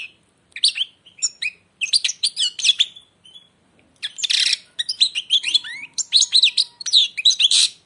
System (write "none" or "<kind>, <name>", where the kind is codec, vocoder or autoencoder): vocoder, BigVGAN v2